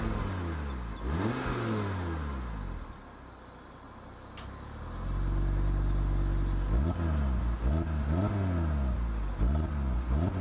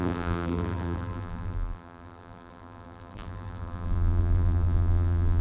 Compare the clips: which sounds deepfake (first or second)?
second